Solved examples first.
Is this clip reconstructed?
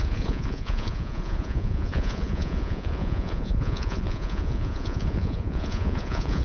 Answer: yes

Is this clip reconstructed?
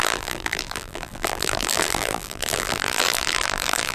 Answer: yes